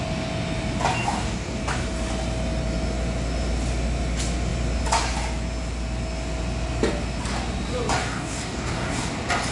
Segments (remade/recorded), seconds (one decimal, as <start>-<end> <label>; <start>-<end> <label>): 0.0-1.0 recorded; 1.0-1.6 remade; 1.6-8.0 recorded; 8.0-9.1 remade; 9.1-9.5 recorded